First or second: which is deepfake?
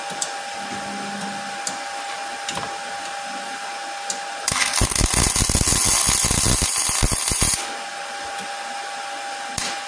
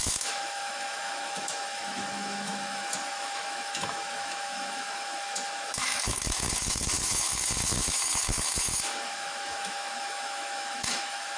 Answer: second